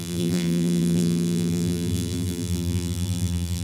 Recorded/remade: remade